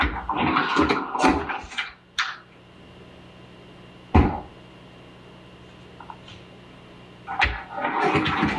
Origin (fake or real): real